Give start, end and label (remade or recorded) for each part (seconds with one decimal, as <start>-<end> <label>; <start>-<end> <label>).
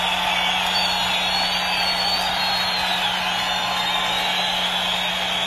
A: 0.0-5.5 recorded